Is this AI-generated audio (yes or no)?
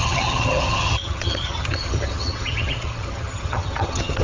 yes